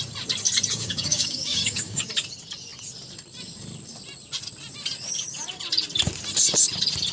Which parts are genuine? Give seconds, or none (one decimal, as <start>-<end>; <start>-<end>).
0.0-0.7; 2.1-7.1